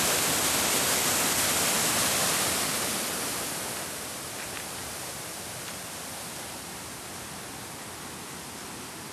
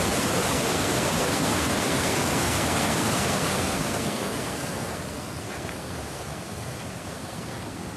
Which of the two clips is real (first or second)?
first